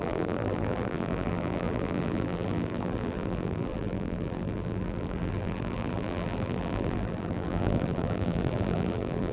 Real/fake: fake